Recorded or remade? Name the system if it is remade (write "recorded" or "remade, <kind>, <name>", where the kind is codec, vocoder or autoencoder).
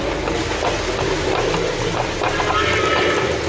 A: recorded